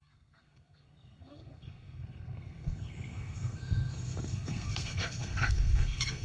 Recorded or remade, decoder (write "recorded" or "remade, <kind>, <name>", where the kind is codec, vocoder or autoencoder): remade, codec, SNAC